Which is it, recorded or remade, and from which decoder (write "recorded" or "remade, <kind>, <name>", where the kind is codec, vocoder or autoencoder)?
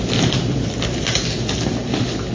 recorded